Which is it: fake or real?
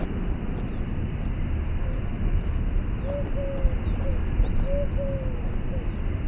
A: real